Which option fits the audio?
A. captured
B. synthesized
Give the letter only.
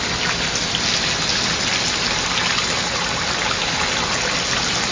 A